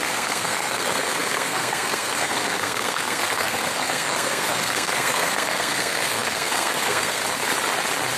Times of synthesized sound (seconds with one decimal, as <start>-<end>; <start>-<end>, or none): 0.0-7.2